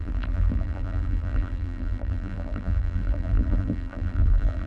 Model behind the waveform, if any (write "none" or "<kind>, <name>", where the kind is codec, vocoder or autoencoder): vocoder, BigVGAN v2